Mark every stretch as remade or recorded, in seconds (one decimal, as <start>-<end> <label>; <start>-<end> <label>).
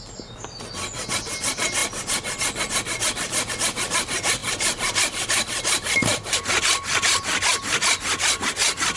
0.0-9.0 recorded